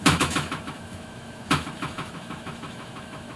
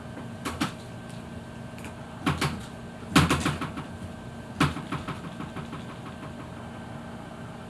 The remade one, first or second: first